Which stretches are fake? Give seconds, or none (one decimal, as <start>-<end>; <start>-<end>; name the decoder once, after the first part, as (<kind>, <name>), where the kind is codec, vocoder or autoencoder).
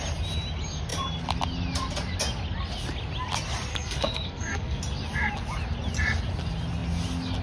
3.7-4.8 (codec, SNAC)